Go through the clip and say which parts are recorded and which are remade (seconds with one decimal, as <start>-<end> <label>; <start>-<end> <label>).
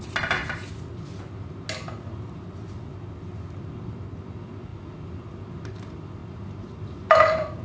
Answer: 0.0-7.6 recorded